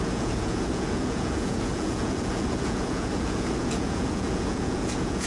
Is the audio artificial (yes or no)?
yes